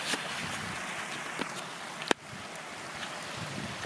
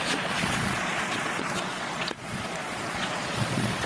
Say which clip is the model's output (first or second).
second